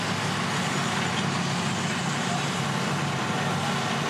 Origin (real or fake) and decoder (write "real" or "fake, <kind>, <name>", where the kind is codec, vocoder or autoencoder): real